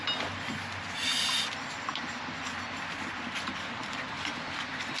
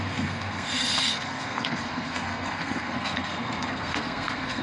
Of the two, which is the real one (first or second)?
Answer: first